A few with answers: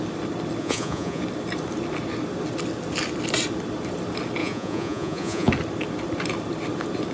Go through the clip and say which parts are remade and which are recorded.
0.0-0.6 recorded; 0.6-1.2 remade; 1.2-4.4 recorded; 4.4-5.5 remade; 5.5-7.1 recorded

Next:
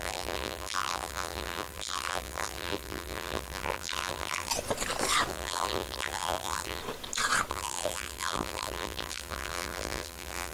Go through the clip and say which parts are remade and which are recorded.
0.0-4.5 remade; 4.5-5.3 recorded; 5.3-6.8 remade; 6.8-7.5 recorded; 7.5-10.5 remade

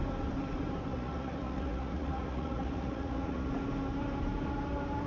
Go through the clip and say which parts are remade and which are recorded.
0.0-0.9 recorded; 0.9-3.5 remade; 3.5-5.1 recorded

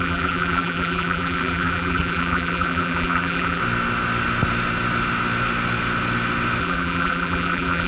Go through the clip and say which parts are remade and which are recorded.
0.0-3.6 remade; 3.6-6.6 recorded; 6.6-7.9 remade

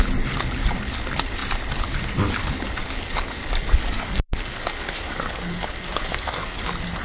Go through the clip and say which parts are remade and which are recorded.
0.0-2.8 recorded; 2.8-6.6 remade; 6.6-7.0 recorded

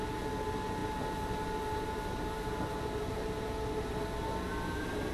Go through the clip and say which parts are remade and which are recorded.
0.0-5.1 recorded